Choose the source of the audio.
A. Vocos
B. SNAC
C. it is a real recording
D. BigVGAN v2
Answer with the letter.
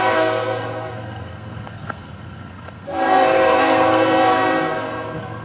B